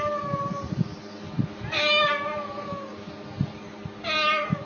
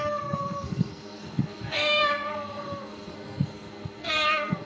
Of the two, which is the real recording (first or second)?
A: first